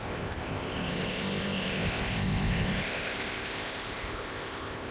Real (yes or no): no